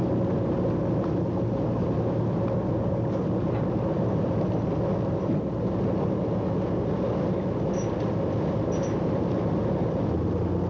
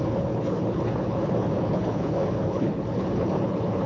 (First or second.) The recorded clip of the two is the first